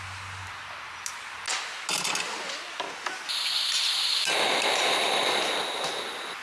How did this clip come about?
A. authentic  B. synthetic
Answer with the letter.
A